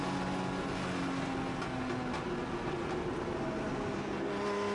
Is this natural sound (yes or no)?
yes